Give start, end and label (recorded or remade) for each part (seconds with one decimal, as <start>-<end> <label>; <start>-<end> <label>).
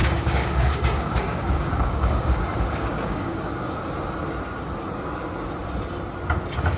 0.0-3.8 remade; 3.8-6.8 recorded